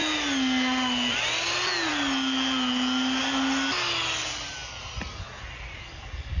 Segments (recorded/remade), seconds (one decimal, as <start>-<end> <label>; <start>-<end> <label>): 0.0-6.4 recorded